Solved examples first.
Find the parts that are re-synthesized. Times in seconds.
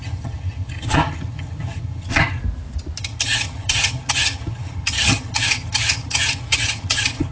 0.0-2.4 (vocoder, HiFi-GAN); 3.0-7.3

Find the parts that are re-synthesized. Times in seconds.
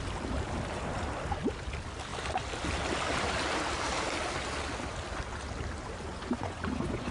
6.1-7.1 (vocoder, Vocos)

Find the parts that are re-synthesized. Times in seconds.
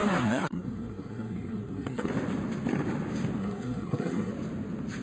0.0-2.1 (codec, SNAC); 3.4-4.3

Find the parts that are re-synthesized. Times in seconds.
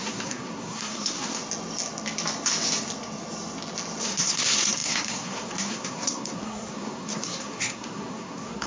0.0-1.4 (codec, SNAC); 4.0-8.7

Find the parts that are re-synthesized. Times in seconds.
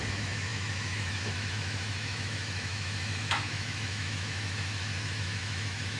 0.0-6.0 (autoencoder, DAC-VAE)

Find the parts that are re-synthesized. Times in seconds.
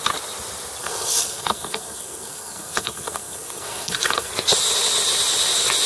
0.8-4.3 (codec, SNAC)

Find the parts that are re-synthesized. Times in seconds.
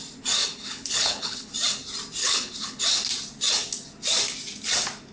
0.5-1.5 (codec, HILCodec); 2.2-2.8